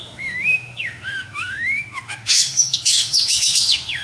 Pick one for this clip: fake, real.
fake